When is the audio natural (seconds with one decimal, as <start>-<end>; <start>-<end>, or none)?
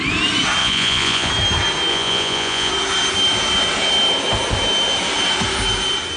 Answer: 0.0-0.6; 1.3-1.9; 2.7-6.2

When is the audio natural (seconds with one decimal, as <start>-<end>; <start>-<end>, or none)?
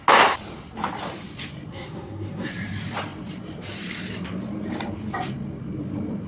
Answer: 0.0-1.7; 2.5-6.3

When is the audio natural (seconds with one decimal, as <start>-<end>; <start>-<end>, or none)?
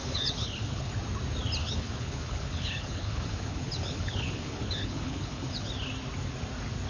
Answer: 0.9-1.6; 5.7-6.9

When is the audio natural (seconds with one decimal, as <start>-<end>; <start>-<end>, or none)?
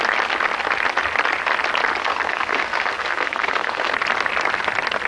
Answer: 0.0-2.0; 3.9-5.1